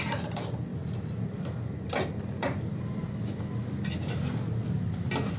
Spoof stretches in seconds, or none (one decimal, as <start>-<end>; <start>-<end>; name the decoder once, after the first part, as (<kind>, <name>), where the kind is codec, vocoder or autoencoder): none